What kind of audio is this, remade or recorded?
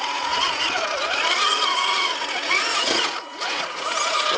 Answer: remade